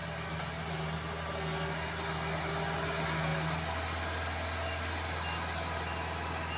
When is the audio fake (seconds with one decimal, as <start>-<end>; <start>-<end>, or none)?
none